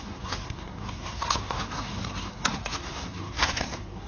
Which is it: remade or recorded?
remade